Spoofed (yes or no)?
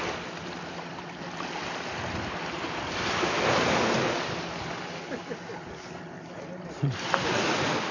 no